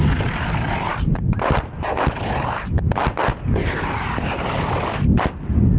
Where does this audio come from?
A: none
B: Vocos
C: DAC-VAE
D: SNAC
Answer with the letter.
A